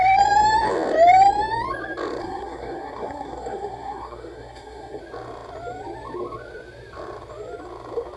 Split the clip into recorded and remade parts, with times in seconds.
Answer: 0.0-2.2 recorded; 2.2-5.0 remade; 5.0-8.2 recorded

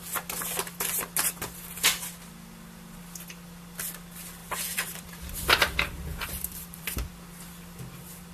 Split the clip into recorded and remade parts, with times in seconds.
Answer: 0.0-4.4 recorded; 4.4-7.1 remade; 7.1-8.3 recorded

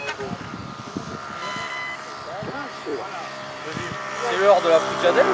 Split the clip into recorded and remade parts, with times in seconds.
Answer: 0.0-0.6 recorded; 0.6-1.1 remade; 1.1-2.9 recorded; 2.9-4.1 remade; 4.1-5.3 recorded

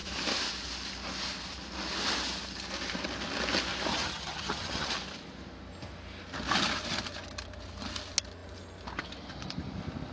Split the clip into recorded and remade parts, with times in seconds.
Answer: 0.0-3.9 recorded; 3.9-4.9 remade; 4.9-10.1 recorded

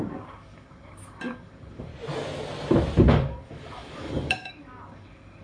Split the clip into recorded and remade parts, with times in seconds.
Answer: 0.0-1.9 remade; 1.9-3.1 recorded; 3.1-5.4 remade